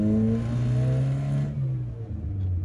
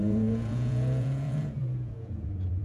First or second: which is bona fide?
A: first